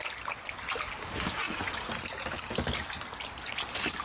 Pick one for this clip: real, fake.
real